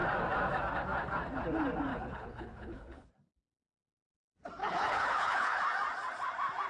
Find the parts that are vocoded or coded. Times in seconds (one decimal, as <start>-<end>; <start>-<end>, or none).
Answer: 1.9-3.1; 4.6-5.6